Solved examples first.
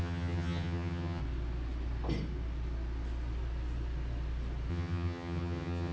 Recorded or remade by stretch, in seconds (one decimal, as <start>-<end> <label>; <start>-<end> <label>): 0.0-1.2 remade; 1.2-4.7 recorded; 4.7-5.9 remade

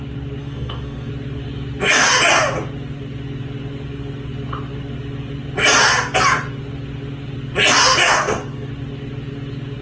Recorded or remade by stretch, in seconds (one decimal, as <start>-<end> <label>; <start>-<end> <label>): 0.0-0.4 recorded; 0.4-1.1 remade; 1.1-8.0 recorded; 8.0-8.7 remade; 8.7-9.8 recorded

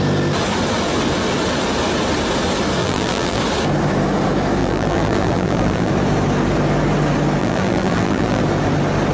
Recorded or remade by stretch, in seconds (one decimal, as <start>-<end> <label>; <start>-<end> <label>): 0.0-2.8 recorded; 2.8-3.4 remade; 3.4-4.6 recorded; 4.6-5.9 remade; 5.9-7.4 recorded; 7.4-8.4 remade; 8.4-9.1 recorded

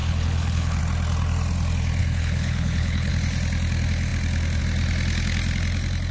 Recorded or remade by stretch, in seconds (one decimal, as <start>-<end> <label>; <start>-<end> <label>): 0.0-0.8 remade; 0.8-2.0 recorded; 2.0-3.1 remade; 3.1-6.1 recorded